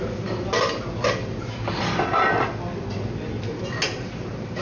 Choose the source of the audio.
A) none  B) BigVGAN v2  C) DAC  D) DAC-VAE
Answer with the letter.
A